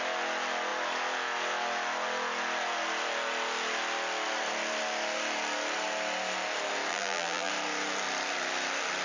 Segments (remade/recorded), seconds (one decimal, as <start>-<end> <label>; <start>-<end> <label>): 0.0-6.9 recorded; 6.9-7.5 remade; 7.5-9.0 recorded